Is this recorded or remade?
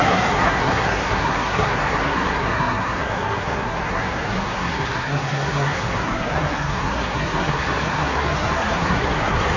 remade